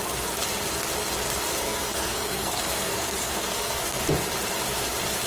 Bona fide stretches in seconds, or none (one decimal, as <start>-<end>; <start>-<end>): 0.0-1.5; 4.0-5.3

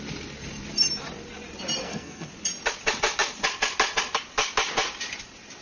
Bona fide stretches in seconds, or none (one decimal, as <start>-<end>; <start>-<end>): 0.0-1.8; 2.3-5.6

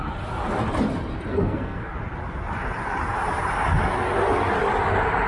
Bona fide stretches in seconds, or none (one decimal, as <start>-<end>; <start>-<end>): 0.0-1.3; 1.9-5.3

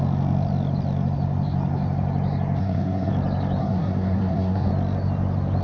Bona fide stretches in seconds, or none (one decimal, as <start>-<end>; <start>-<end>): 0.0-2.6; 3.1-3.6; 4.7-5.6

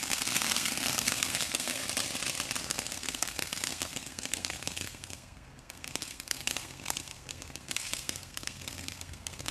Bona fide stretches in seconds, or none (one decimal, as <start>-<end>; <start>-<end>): 1.8-2.6

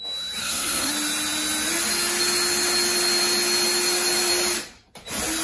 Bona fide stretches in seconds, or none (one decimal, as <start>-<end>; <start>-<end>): 0.0-0.4; 0.9-5.4

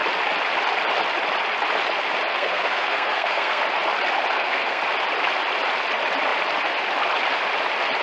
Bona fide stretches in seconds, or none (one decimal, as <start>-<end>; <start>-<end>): 0.0-2.3; 3.6-4.3; 4.8-8.0

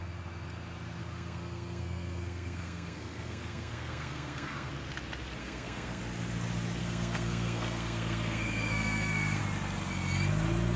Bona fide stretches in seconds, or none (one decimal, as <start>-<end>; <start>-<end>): 0.0-1.0; 4.7-5.4; 6.0-6.8; 9.4-10.8